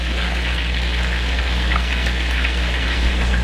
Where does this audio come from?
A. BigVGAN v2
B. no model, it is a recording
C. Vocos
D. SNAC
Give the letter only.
D